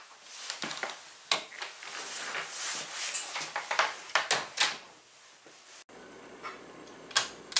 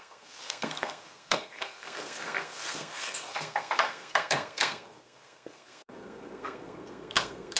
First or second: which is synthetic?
second